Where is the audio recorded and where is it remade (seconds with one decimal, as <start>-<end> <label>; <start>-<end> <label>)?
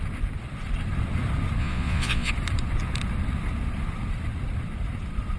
0.0-1.6 recorded; 1.6-2.3 remade; 2.3-5.4 recorded